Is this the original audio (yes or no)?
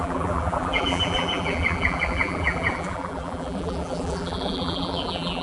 no